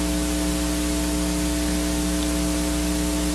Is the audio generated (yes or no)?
no